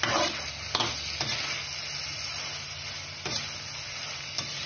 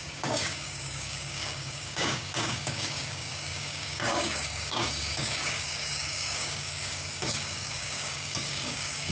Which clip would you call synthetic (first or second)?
second